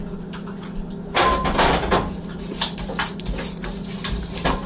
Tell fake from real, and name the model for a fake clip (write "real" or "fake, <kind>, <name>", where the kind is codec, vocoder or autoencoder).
real